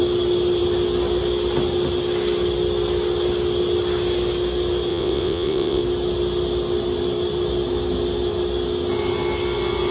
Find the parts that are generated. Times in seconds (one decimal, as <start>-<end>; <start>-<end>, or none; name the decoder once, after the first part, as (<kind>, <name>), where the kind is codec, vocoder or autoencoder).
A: 4.9-5.8 (vocoder, WaveNeXt)